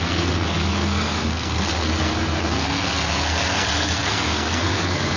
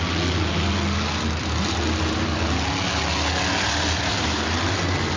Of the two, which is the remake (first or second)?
first